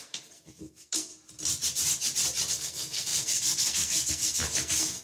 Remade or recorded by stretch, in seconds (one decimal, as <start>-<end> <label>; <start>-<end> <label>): 0.0-1.1 remade; 1.1-2.5 recorded; 2.5-5.0 remade